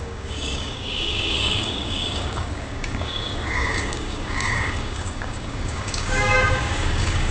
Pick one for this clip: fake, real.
fake